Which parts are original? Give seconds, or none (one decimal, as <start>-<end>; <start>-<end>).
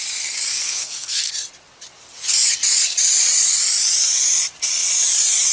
0.0-0.5; 1.3-5.5